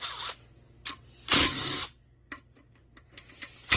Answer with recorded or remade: recorded